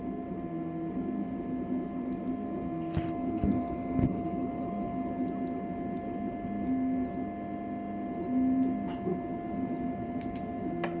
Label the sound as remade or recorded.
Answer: recorded